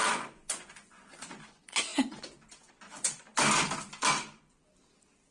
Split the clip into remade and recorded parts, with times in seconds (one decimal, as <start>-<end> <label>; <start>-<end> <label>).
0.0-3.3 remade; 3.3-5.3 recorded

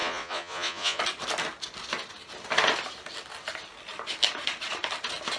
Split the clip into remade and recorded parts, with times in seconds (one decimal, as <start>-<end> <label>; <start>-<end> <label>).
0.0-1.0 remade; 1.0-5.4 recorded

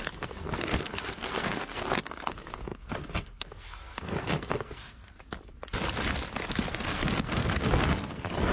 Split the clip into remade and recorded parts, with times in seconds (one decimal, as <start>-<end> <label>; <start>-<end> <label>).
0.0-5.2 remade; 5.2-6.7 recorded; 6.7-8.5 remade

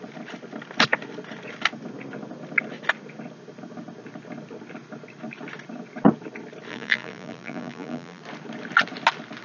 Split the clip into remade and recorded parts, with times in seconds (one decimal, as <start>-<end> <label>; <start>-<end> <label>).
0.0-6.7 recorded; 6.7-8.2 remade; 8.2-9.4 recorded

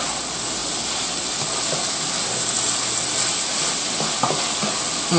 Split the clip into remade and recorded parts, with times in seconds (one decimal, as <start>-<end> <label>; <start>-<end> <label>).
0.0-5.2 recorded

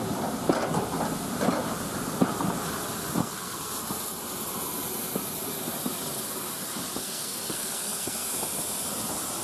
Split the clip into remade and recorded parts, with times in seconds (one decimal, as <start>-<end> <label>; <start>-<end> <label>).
0.0-3.2 recorded; 3.2-3.7 remade; 3.7-7.0 recorded; 7.0-8.3 remade; 8.3-9.4 recorded

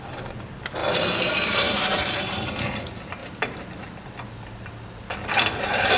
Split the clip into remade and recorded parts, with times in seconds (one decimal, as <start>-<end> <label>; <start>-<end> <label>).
0.0-0.8 recorded; 0.8-2.5 remade; 2.5-6.0 recorded

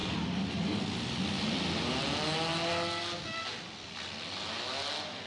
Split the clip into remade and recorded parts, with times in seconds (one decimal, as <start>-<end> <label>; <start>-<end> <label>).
0.0-5.3 recorded